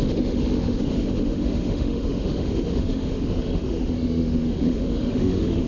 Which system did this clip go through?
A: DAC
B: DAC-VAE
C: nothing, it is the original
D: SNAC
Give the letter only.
B